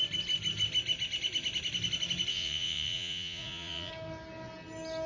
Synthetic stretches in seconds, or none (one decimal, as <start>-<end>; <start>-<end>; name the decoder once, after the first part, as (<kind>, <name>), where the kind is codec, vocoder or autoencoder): 2.3-3.9 (vocoder, Vocos)